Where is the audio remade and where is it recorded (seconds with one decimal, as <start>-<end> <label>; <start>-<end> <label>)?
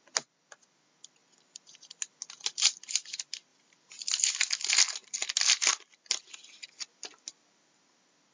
0.0-3.5 recorded; 3.5-4.9 remade; 4.9-8.3 recorded